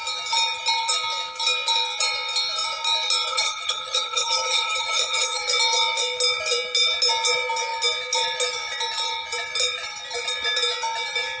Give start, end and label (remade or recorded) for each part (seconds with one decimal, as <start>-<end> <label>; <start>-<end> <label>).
0.0-3.3 recorded; 3.3-5.4 remade; 5.4-11.4 recorded